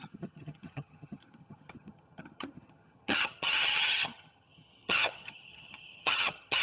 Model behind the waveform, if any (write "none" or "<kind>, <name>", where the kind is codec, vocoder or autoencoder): vocoder, HiFi-GAN